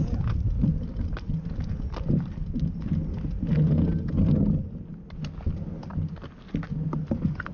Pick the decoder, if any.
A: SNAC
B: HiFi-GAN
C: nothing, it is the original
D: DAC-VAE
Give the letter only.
C